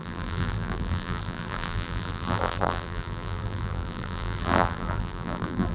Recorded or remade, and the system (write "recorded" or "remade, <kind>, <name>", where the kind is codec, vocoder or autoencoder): remade, vocoder, BigVGAN v2